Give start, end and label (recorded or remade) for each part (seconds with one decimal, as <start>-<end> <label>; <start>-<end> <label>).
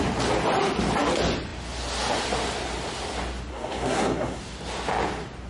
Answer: 0.0-3.5 recorded; 3.5-4.4 remade; 4.4-5.5 recorded